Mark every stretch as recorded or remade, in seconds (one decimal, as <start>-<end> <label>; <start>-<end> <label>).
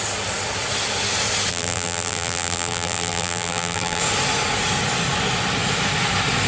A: 0.0-1.5 recorded; 1.5-4.0 remade; 4.0-6.5 recorded